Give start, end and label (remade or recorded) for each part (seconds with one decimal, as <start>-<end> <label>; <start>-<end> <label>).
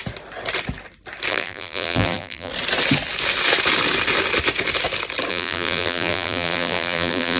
0.0-1.3 recorded; 1.3-2.5 remade; 2.5-5.3 recorded; 5.3-7.4 remade